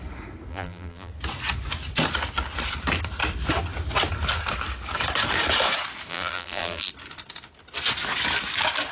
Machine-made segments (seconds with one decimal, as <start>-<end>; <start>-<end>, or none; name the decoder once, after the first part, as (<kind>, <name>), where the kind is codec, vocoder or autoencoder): 0.5-1.1 (vocoder, BigVGAN v2); 6.1-6.9